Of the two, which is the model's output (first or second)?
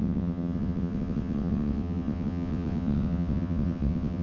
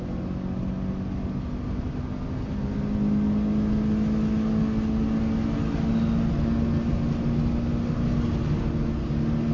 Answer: first